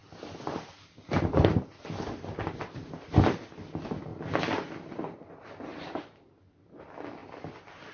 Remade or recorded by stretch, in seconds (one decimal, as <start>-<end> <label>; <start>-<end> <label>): 0.0-7.9 recorded